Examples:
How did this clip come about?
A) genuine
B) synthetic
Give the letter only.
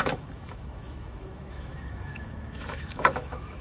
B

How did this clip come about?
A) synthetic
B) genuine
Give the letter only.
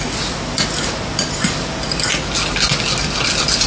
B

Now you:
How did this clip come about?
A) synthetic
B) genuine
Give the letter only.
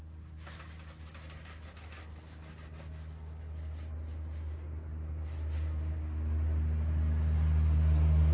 B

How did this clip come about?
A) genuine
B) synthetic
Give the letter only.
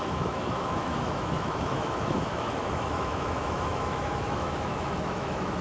B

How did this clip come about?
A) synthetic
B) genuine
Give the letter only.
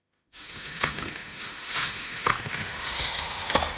A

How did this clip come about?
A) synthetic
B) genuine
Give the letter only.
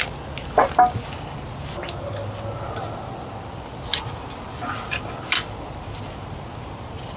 B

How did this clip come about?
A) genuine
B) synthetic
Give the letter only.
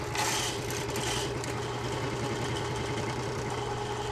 A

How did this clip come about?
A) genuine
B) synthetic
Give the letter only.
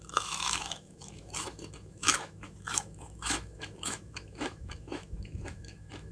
B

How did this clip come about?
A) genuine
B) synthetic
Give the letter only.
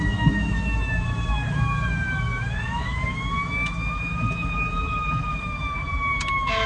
B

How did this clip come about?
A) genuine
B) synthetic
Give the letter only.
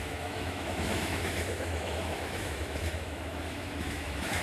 B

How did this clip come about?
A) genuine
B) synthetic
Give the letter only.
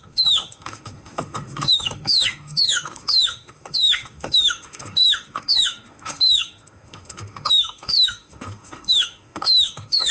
B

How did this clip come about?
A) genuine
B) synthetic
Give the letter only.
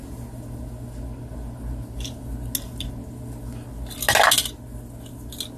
A